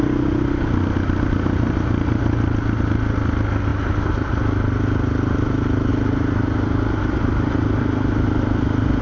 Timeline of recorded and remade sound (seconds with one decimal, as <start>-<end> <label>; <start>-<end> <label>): 0.0-9.0 recorded